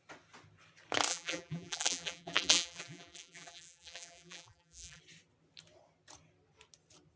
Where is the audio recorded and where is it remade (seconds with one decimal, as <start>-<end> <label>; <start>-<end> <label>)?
0.0-1.1 recorded; 1.1-5.0 remade; 5.0-7.2 recorded